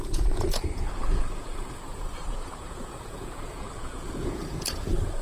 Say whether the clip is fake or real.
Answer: fake